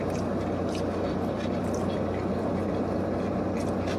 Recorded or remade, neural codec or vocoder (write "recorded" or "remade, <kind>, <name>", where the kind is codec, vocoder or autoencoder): recorded